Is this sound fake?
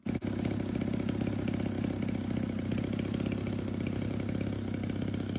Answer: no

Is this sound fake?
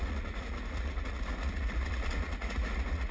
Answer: yes